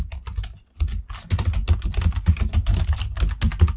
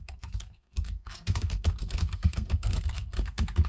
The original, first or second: first